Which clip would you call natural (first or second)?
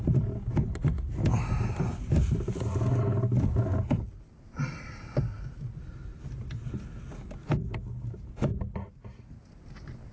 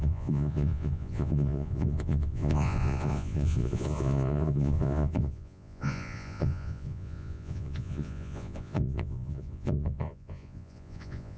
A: first